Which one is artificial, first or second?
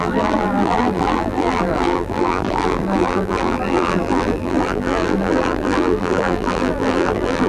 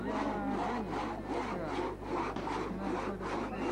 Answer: first